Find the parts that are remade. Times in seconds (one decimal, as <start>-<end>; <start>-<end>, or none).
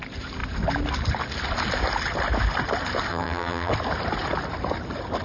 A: 3.1-3.7